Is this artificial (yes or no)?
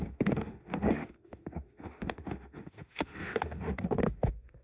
yes